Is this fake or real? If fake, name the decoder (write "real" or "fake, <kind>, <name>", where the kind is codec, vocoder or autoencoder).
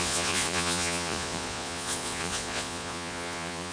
fake, vocoder, Vocos